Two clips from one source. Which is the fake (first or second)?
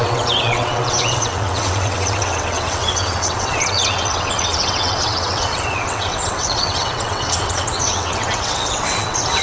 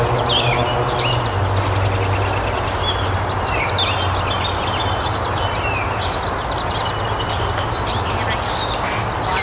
first